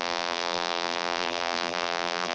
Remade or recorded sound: remade